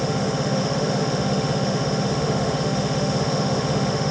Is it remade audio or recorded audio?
remade